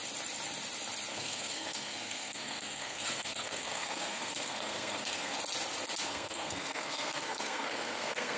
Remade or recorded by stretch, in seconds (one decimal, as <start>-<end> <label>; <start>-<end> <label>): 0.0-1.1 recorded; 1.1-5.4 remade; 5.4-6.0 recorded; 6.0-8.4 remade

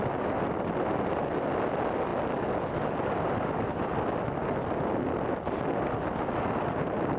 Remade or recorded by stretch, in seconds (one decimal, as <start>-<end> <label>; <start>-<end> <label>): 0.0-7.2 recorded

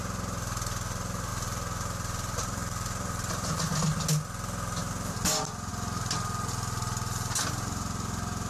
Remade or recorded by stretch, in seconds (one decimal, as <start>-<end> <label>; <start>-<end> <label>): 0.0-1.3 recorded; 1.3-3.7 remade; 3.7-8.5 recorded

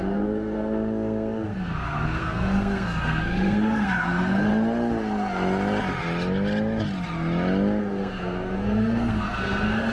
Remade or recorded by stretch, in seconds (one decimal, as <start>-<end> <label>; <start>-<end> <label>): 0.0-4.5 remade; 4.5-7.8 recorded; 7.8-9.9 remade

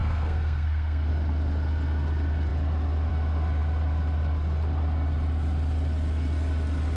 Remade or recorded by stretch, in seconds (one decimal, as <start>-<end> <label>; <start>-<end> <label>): 0.0-1.1 remade; 1.1-7.0 recorded

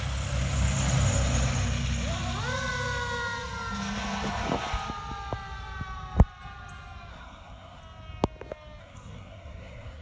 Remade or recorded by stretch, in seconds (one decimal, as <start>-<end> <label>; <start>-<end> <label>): 0.0-7.1 recorded; 7.1-7.8 remade; 7.8-8.8 recorded; 8.8-10.0 remade

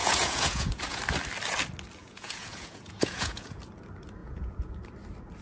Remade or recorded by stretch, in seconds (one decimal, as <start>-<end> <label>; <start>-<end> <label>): 0.0-1.0 remade; 1.0-2.0 recorded; 2.0-3.6 remade; 3.6-4.2 recorded; 4.2-4.7 remade; 4.7-5.4 recorded